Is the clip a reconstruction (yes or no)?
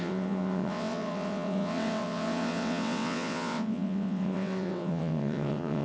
yes